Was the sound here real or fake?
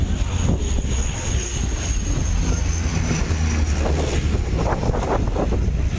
real